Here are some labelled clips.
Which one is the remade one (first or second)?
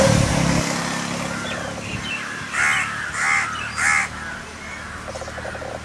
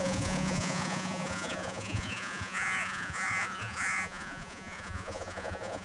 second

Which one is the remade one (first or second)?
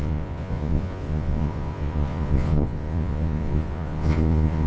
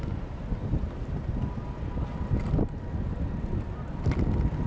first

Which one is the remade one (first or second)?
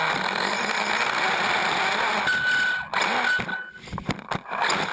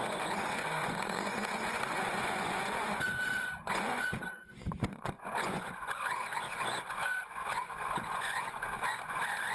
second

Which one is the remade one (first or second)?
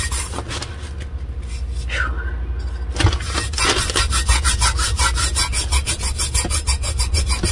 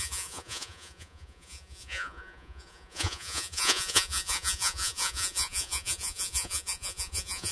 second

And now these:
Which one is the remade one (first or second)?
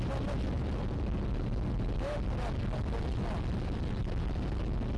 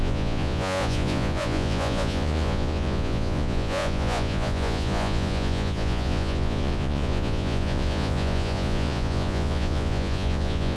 second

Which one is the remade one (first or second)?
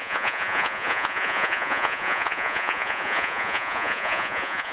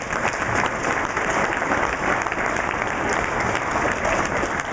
first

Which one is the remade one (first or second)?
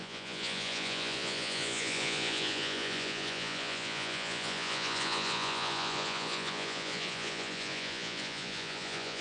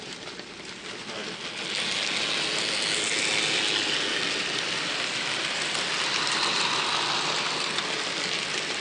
first